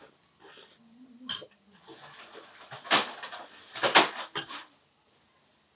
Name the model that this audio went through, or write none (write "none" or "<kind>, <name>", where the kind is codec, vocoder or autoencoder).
none